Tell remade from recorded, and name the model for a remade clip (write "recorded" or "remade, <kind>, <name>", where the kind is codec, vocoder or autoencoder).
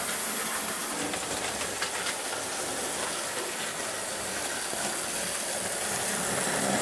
recorded